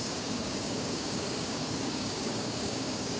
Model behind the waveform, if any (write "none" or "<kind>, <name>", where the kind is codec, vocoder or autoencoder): codec, DAC